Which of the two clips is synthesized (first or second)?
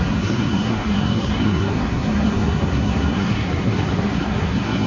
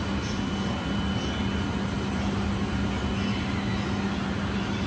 first